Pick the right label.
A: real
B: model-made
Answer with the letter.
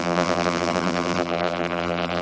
B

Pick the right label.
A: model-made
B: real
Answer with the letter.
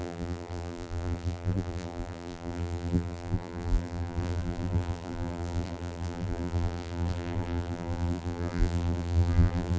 A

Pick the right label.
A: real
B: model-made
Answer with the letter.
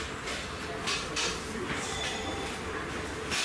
A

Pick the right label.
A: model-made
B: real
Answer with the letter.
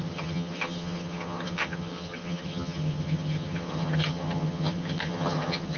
A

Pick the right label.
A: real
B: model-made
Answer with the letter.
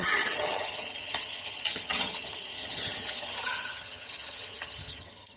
B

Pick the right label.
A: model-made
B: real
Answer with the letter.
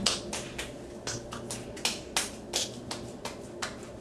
B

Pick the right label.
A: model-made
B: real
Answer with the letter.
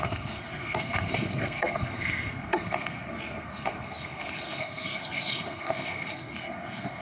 A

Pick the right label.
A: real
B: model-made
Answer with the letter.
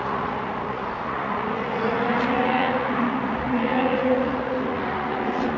B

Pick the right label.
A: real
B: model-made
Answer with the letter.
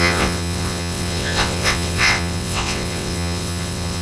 B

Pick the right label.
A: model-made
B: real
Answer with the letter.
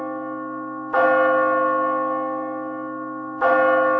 B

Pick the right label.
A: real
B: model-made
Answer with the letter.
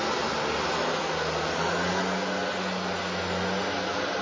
A